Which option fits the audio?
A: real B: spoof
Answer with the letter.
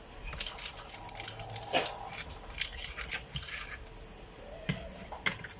A